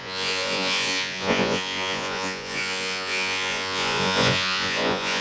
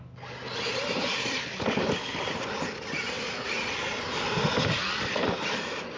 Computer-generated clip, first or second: first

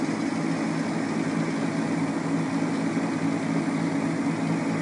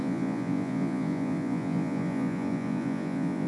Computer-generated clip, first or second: second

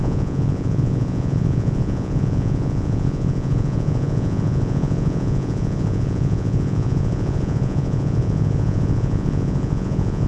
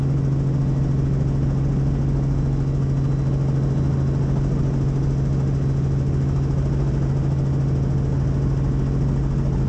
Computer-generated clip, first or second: first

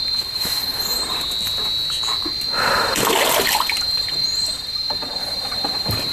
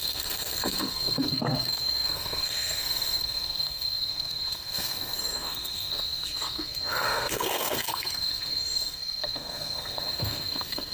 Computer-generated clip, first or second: second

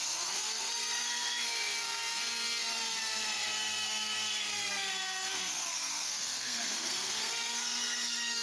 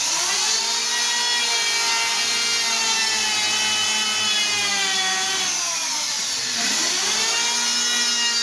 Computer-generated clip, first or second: first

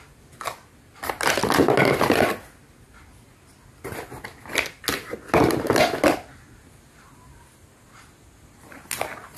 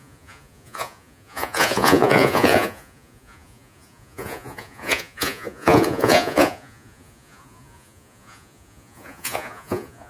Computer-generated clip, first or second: second